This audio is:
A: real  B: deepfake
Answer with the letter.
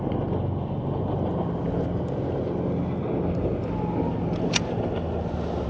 A